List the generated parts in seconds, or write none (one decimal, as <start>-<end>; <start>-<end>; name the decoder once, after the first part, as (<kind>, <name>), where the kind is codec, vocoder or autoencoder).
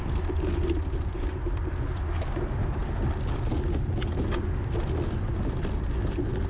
none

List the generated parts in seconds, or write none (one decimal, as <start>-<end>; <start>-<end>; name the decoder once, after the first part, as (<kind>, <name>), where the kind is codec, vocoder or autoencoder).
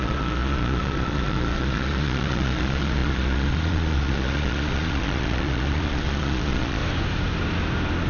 0.0-6.8 (vocoder, Vocos)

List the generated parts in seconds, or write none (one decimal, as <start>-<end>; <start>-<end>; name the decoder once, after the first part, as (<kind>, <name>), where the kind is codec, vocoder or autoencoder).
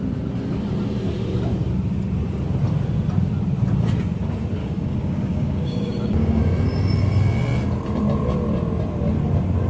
4.6-6.4 (codec, DAC)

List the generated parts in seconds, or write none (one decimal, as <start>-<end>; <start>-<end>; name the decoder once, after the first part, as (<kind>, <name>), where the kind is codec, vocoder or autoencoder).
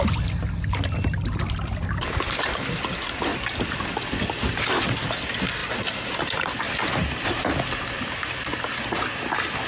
none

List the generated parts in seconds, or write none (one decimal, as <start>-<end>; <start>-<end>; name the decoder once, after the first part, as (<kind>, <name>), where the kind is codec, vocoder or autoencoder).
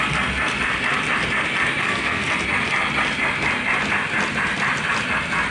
1.8-2.3 (codec, SNAC)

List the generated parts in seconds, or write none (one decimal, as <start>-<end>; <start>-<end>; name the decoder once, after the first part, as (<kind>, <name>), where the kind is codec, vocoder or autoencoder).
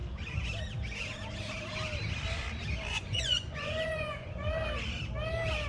2.9-4.5 (vocoder, Vocos)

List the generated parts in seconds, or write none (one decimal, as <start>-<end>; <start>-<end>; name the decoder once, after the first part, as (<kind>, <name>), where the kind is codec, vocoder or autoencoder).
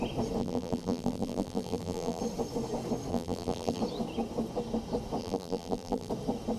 0.4-2.2 (vocoder, BigVGAN v2); 3.1-3.8; 5.2-6.1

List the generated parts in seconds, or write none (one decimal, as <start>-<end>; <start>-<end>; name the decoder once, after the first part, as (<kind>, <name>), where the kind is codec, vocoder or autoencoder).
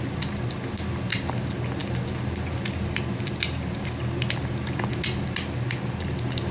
none